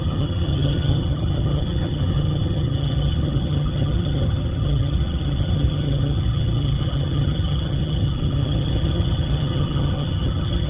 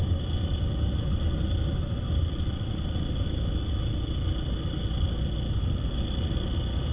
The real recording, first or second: second